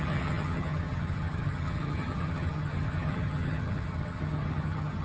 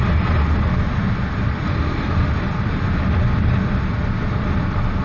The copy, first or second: first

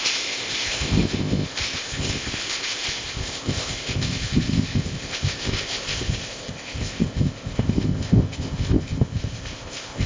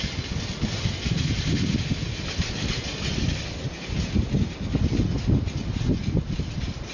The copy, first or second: first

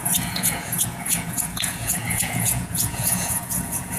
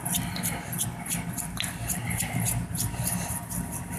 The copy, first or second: first